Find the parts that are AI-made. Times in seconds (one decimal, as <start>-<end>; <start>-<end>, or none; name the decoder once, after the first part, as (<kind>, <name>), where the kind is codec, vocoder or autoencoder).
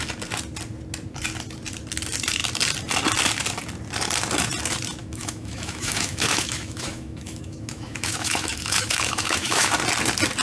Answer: 5.0-9.7 (autoencoder, DAC-VAE)